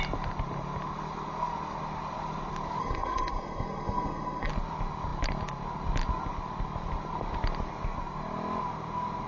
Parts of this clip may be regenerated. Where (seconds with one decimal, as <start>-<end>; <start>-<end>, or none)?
2.8-4.5